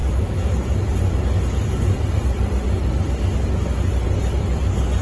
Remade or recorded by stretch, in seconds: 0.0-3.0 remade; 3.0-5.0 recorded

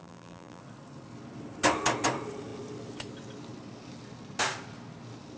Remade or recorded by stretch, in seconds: 0.0-0.6 remade; 0.6-5.4 recorded